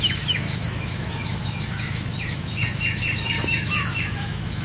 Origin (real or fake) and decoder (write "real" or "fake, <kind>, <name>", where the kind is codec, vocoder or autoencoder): fake, autoencoder, DAC-VAE